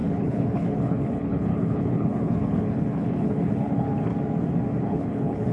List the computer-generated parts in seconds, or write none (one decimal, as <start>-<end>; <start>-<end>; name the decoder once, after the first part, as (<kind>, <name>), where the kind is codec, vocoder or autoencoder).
0.0-4.1 (codec, HILCodec); 4.8-5.5